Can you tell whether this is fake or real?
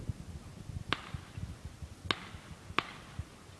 real